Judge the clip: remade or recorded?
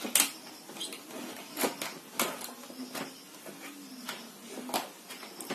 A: recorded